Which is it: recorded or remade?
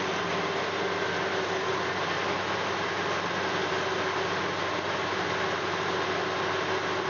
recorded